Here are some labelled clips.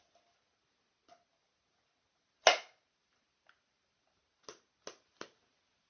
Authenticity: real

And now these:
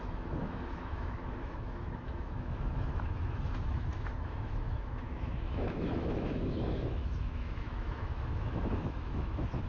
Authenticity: fake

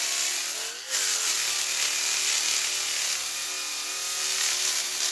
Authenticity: real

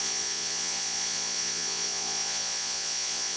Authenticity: fake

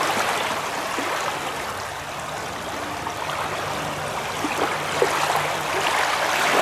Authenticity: real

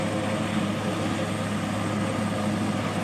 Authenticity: real